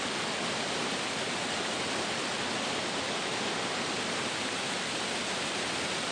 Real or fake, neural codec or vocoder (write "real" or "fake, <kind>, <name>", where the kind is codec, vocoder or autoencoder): real